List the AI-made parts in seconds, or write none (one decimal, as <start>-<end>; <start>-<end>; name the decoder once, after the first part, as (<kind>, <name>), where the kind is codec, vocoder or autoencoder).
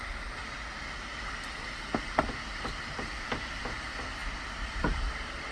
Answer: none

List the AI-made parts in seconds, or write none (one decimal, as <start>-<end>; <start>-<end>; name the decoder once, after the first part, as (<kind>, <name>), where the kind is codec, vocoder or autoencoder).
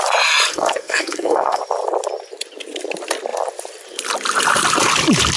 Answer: 0.5-1.6 (codec, SNAC)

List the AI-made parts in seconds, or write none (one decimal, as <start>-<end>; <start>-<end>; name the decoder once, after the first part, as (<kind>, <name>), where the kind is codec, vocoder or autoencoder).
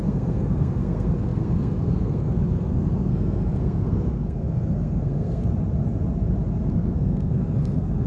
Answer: 0.0-5.5 (codec, SNAC); 6.7-8.1